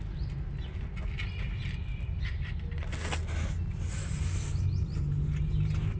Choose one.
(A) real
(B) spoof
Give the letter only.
A